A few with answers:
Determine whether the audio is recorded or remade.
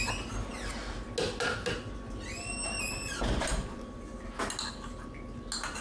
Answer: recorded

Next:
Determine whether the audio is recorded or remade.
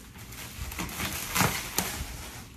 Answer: recorded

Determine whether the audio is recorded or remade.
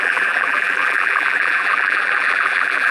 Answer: remade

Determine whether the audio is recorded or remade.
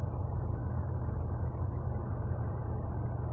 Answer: recorded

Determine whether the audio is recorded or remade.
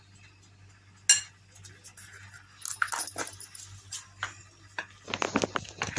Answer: recorded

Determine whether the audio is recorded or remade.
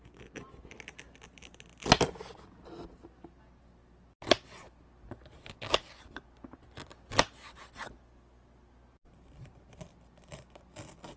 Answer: recorded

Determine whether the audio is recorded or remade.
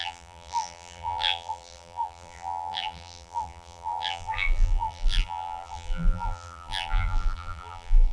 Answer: remade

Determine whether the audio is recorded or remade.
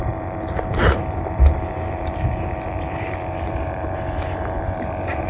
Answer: remade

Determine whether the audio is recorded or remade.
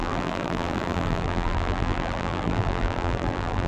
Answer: remade